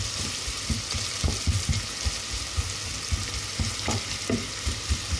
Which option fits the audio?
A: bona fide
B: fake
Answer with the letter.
A